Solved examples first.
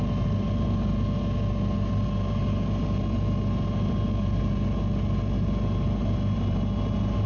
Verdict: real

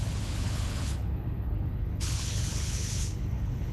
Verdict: fake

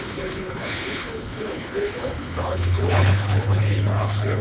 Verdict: fake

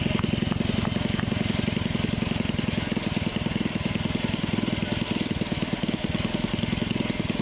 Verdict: real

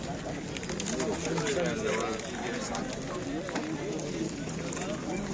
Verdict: real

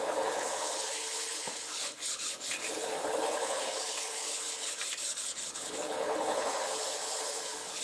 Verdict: fake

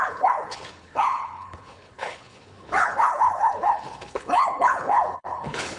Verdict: fake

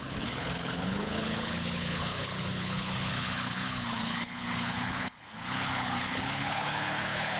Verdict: fake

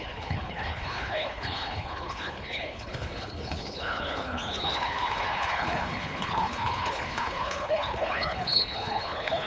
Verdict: fake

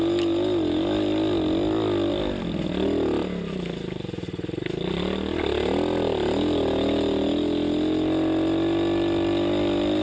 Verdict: real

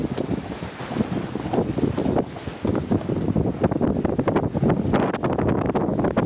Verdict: real